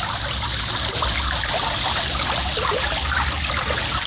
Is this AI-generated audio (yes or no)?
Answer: no